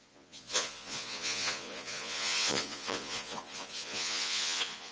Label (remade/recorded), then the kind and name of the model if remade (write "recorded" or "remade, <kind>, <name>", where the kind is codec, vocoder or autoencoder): remade, vocoder, Vocos